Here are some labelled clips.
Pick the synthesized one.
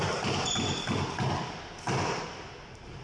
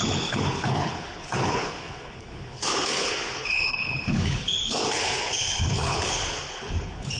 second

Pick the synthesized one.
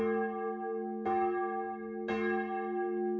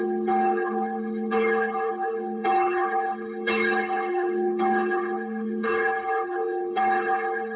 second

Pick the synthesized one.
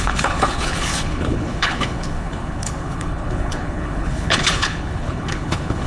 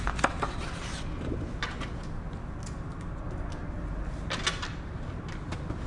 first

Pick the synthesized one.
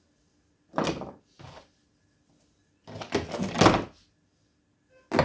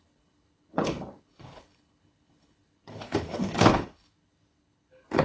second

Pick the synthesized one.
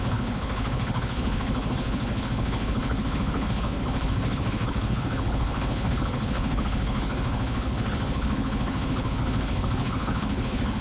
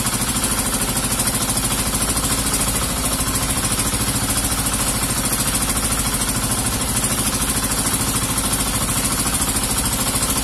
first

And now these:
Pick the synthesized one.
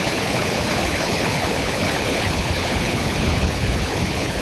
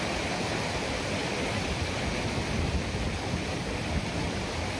first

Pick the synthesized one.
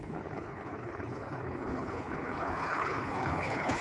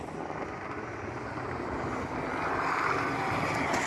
first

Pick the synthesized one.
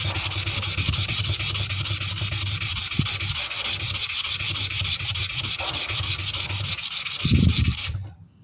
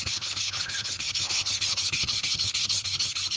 second